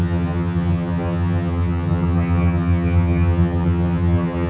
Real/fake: fake